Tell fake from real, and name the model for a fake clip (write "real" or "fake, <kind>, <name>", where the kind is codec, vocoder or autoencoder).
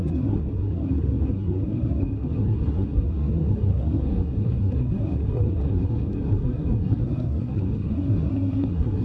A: fake, codec, SNAC